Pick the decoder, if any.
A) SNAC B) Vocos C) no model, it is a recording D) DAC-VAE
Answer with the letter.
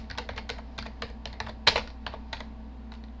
C